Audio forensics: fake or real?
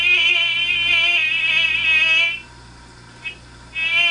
real